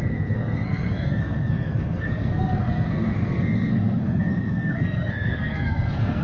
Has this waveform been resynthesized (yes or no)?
yes